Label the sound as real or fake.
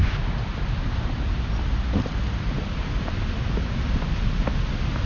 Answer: real